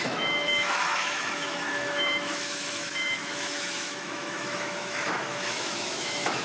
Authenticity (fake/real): fake